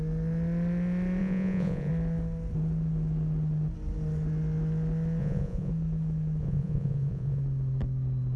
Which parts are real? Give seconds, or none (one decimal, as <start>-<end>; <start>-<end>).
0.0-1.2; 1.9-5.2; 5.7-6.4; 7.4-8.4